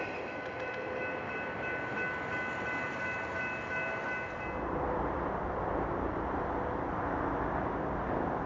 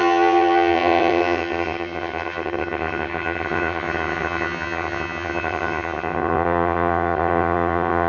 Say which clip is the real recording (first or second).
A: first